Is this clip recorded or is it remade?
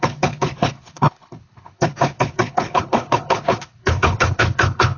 remade